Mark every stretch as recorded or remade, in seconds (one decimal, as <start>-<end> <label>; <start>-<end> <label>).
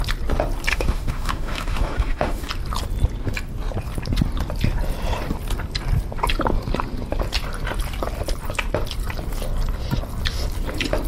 0.0-0.7 recorded; 0.7-2.5 remade; 2.5-11.1 recorded